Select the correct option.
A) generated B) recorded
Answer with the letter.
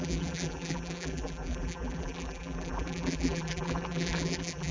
A